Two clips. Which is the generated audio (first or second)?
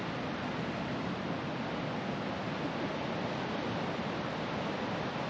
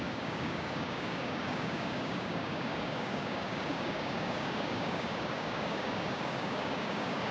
second